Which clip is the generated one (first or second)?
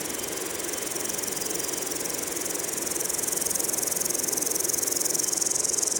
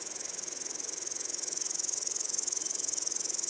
second